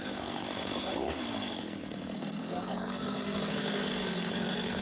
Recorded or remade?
remade